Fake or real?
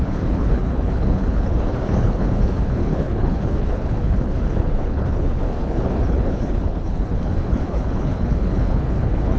fake